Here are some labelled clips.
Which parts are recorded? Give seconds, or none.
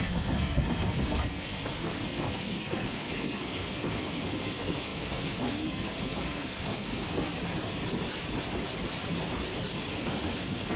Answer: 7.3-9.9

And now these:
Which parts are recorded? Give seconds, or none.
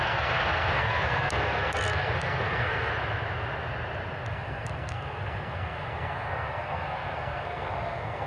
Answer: 2.9-4.3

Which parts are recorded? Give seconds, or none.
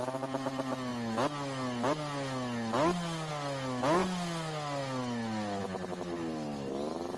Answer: 0.0-7.2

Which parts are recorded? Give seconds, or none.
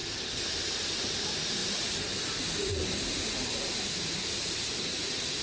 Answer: 0.0-1.0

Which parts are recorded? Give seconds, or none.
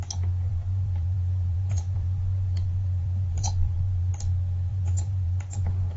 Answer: 0.0-0.5; 4.1-4.7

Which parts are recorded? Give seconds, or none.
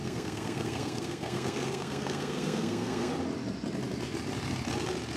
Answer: 3.1-5.2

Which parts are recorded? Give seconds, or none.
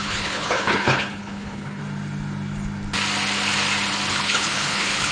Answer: 1.8-4.1